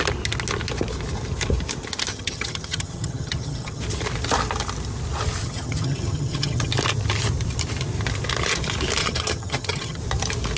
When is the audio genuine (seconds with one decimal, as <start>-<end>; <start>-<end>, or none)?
0.0-2.1; 3.8-5.4; 6.7-9.0; 10.0-10.6